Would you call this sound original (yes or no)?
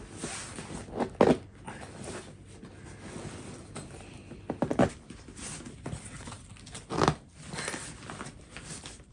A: yes